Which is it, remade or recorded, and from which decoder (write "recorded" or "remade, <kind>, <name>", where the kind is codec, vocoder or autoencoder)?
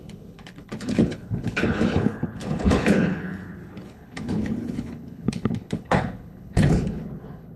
remade, codec, HILCodec